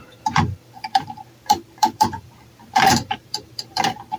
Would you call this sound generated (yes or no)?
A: yes